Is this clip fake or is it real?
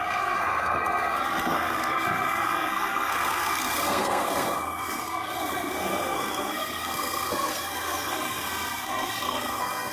fake